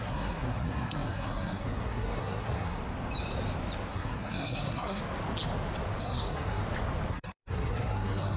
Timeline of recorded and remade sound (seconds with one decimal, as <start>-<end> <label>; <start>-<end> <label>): 0.0-2.8 remade; 2.8-3.9 recorded; 3.9-5.0 remade; 5.0-6.0 recorded; 6.0-6.6 remade; 6.6-7.1 recorded; 7.1-8.4 remade